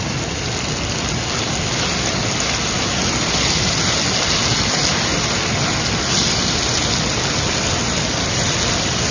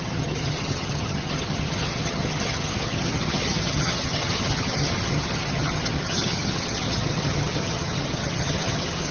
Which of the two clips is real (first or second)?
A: first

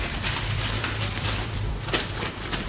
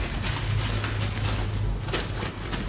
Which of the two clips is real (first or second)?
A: second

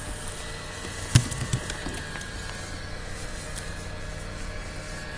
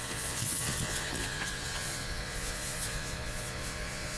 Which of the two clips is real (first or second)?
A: first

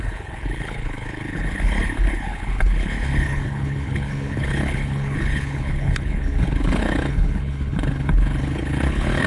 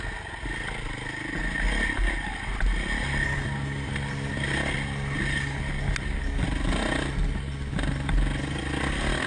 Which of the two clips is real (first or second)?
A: second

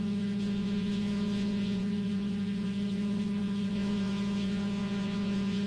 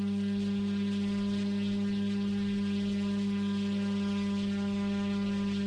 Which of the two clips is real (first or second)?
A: second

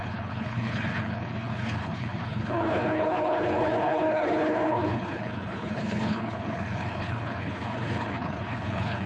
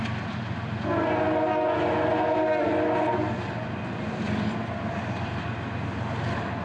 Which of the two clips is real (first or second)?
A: second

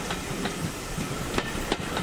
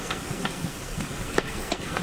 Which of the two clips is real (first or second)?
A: first